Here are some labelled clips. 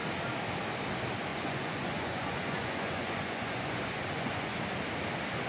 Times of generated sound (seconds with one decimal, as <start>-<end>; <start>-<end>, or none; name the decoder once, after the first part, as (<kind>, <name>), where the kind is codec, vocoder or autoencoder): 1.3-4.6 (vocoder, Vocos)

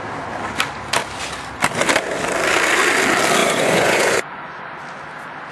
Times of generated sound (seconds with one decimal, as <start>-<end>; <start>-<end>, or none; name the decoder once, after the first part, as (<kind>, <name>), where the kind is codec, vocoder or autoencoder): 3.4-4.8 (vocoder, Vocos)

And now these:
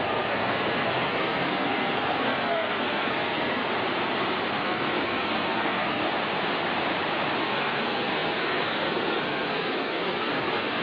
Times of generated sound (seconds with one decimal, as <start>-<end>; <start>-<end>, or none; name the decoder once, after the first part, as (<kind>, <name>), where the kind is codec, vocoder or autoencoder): 0.0-3.6 (codec, SNAC); 4.5-6.0; 7.4-10.8

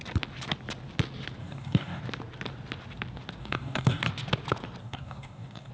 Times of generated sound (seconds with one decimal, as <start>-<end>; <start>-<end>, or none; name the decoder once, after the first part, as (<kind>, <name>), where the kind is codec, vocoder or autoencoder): 1.4-2.0 (codec, DAC); 3.4-4.1; 4.8-5.7

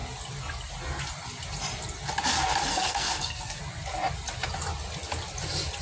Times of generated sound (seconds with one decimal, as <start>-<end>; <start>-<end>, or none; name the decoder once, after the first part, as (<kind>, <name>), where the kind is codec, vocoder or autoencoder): 2.7-3.6 (codec, SNAC)

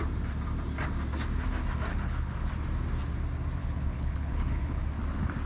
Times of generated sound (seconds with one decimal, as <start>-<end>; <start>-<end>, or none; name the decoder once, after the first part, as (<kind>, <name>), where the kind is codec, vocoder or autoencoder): 1.9-2.5 (codec, HILCodec); 3.6-4.8